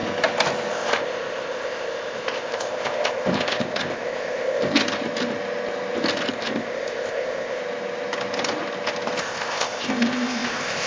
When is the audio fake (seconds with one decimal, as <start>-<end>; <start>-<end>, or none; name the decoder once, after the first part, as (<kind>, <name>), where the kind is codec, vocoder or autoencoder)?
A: 0.7-4.8 (codec, ZipCodec); 6.3-7.6; 9.2-10.9